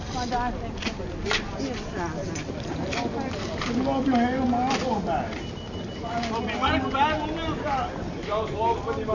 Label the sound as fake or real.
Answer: real